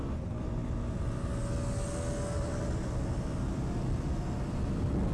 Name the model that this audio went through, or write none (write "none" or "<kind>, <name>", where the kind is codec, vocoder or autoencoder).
none